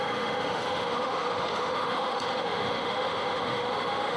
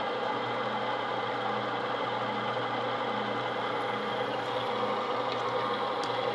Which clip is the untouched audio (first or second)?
second